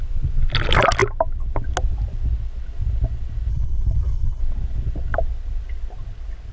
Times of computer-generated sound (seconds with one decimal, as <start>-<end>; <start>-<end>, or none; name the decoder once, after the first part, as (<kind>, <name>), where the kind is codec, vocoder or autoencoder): 3.5-4.4 (codec, HILCodec)